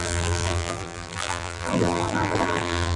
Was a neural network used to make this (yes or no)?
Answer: yes